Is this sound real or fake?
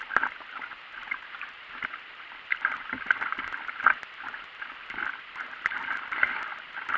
fake